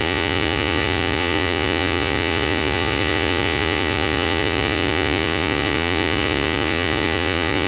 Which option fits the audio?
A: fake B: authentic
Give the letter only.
A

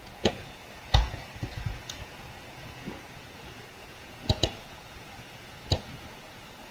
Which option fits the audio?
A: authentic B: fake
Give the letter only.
B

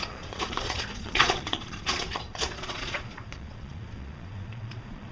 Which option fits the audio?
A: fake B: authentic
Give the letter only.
A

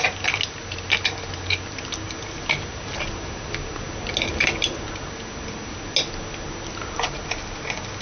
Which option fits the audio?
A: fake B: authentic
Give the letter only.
B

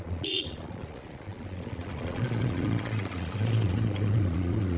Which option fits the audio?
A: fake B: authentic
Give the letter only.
A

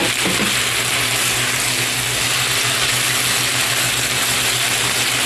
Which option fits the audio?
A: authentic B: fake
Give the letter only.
A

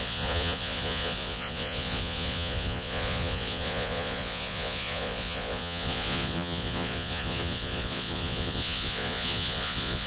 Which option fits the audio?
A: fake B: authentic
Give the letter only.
A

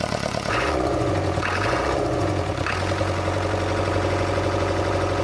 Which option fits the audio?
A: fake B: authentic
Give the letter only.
A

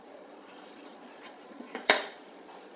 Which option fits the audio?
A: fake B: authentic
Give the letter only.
A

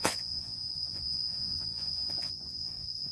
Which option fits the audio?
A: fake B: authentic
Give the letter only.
A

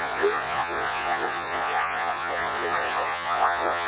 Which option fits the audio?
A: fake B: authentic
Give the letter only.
A